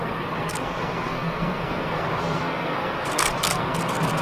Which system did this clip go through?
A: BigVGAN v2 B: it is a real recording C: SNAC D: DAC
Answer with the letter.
C